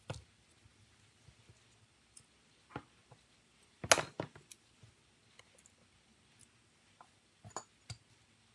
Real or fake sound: real